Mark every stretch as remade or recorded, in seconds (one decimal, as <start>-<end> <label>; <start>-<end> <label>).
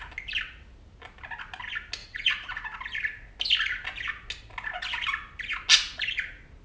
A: 0.0-2.0 recorded; 2.0-2.8 remade; 2.8-6.6 recorded